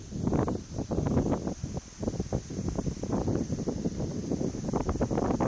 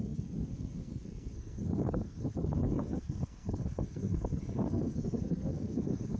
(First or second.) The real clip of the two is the first